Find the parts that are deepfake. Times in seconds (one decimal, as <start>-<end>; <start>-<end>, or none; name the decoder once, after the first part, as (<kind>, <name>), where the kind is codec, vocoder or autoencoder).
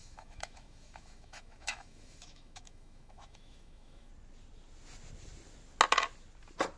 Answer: 0.0-4.1 (autoencoder, DAC-VAE)